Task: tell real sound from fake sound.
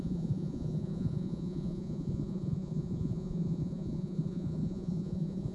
fake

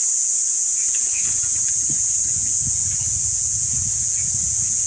fake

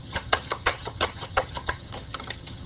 fake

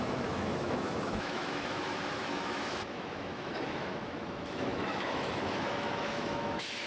fake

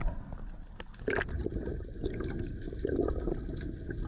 real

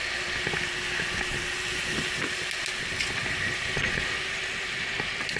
real